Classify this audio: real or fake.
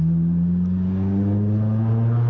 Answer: real